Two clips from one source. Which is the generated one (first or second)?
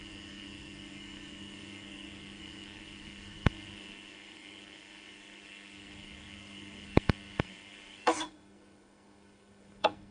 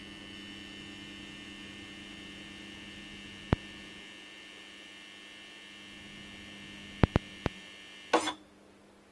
first